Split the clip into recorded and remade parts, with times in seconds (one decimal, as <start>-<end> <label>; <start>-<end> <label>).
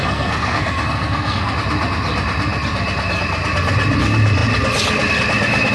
0.0-1.5 remade; 1.5-5.7 recorded